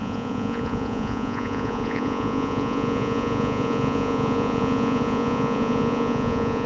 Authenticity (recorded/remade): remade